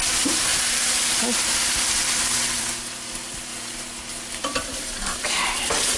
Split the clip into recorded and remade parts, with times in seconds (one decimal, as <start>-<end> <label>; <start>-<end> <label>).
0.0-3.5 remade; 3.5-4.1 recorded; 4.1-6.0 remade

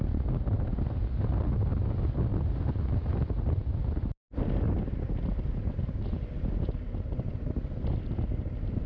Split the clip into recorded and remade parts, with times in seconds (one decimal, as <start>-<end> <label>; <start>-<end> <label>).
0.0-8.9 recorded